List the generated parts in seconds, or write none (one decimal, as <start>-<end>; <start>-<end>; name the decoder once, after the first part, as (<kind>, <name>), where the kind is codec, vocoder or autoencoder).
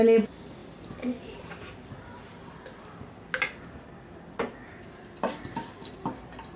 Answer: none